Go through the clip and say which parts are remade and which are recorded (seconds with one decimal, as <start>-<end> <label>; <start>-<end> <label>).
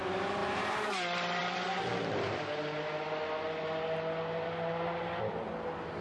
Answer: 0.0-6.0 recorded